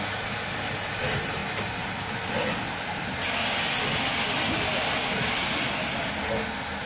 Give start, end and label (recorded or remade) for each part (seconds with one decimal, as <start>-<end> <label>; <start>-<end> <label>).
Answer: 0.0-6.9 recorded